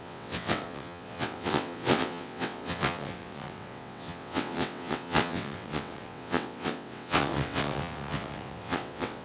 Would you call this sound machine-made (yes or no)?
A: yes